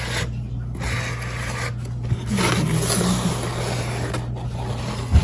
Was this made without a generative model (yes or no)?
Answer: yes